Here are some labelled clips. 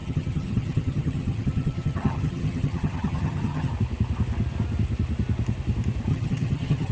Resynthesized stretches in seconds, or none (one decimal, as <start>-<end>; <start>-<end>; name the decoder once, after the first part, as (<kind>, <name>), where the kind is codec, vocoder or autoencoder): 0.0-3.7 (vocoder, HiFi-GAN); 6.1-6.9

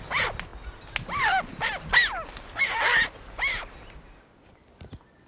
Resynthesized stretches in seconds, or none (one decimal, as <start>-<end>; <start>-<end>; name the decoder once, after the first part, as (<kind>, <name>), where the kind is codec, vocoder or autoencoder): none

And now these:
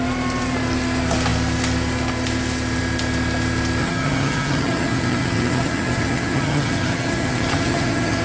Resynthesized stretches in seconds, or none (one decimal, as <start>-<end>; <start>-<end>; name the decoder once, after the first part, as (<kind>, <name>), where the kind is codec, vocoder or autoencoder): 3.8-8.2 (vocoder, HiFi-GAN)